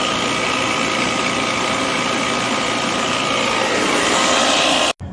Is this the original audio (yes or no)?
yes